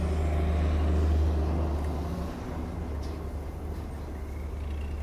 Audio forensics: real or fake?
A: real